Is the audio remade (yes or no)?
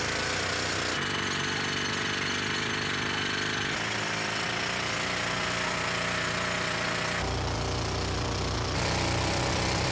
no